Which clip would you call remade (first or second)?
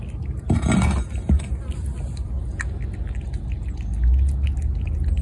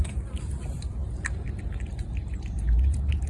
second